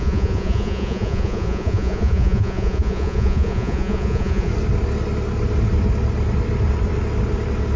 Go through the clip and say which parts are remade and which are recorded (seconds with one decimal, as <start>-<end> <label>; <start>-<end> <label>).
0.0-4.5 remade; 4.5-7.8 recorded